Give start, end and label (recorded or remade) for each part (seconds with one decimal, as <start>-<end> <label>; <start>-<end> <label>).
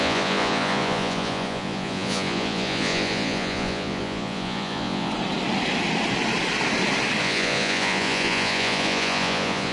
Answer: 0.0-5.1 remade; 5.1-7.2 recorded; 7.2-9.7 remade